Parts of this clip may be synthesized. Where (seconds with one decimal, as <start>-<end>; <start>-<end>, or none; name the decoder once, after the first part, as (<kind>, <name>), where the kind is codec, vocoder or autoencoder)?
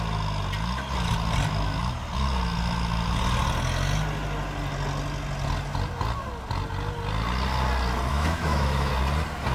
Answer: 8.1-8.9 (autoencoder, DAC-VAE)